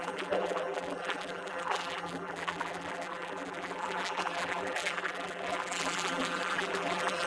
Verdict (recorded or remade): remade